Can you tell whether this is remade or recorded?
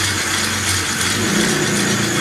recorded